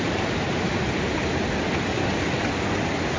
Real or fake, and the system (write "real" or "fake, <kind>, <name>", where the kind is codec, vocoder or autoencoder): real